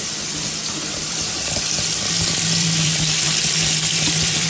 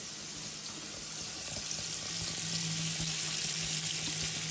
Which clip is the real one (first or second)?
second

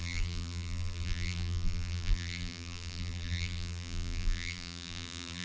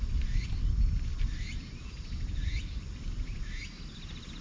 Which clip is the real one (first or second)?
second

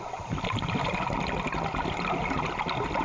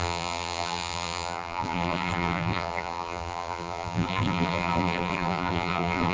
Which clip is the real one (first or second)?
first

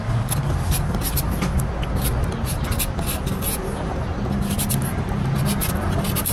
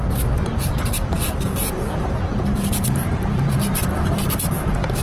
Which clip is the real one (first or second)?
first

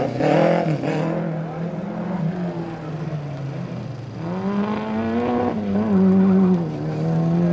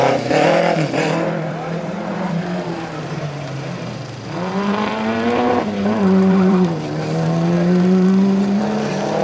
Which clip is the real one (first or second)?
first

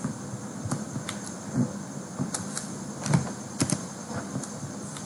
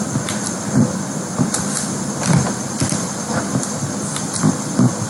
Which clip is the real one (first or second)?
first